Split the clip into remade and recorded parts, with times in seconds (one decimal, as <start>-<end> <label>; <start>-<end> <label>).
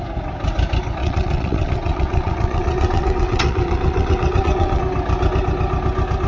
0.0-1.0 recorded; 1.0-4.8 remade; 4.8-6.3 recorded